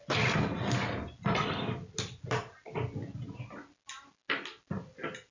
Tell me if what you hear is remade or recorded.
recorded